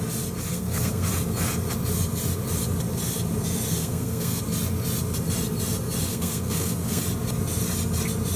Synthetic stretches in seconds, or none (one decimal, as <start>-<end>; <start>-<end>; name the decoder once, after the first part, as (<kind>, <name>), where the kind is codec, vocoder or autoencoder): 0.5-1.1 (codec, SNAC); 3.8-4.4; 6.1-7.0